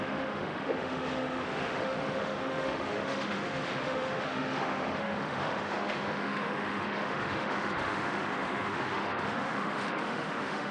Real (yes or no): no